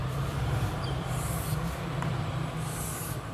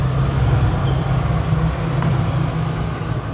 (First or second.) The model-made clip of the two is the first